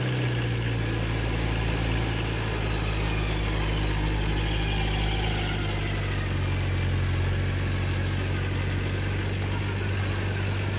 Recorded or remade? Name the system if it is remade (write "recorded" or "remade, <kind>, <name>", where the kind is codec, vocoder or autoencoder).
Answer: recorded